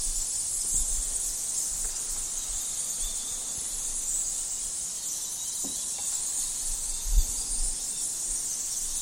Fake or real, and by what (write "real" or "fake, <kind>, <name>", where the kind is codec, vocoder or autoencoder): real